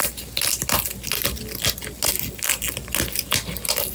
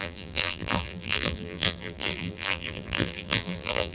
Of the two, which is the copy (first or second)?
second